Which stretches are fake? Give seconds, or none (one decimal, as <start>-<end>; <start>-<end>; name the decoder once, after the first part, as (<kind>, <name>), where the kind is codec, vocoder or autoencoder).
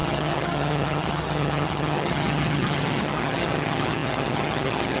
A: 0.0-5.0 (vocoder, HiFi-GAN)